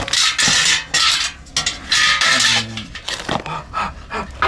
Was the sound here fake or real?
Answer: real